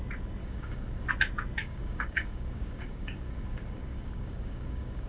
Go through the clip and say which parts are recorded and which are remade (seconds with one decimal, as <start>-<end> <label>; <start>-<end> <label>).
0.0-0.4 recorded; 0.4-1.1 remade; 1.1-1.6 recorded; 1.6-5.1 remade